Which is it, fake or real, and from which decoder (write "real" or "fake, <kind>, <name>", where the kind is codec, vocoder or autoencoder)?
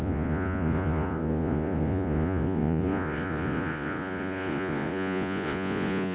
fake, vocoder, Vocos